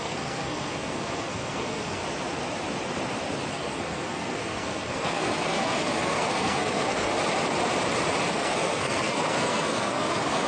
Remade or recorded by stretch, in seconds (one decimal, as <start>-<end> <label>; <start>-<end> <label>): 0.0-2.0 remade; 2.0-3.5 recorded; 3.5-7.1 remade; 7.1-8.3 recorded; 8.3-10.5 remade